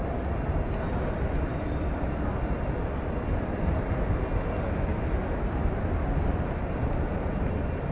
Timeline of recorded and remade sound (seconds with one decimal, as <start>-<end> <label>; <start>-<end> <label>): 0.0-7.9 recorded

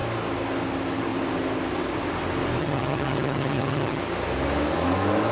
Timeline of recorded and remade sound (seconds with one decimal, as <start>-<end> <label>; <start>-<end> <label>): 0.0-2.6 recorded; 2.6-4.0 remade; 4.0-5.3 recorded

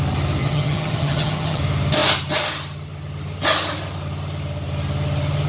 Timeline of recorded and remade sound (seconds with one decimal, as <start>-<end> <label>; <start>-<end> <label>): 0.0-0.4 recorded; 0.4-1.6 remade; 1.6-5.5 recorded

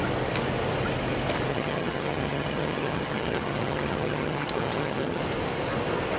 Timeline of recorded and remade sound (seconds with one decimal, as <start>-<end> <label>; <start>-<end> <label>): 0.0-1.5 recorded; 1.5-5.2 remade; 5.2-6.2 recorded

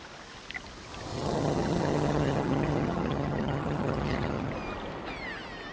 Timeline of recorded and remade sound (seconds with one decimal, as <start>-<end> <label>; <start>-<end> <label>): 0.0-1.1 recorded; 1.1-4.5 remade; 4.5-5.7 recorded

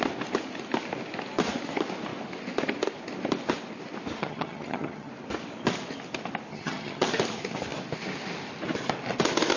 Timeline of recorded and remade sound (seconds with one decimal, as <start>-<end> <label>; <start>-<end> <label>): 0.0-4.2 recorded; 4.2-5.1 remade; 5.1-6.5 recorded; 6.5-7.1 remade; 7.1-9.6 recorded